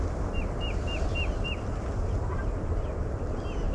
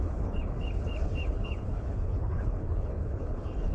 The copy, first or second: second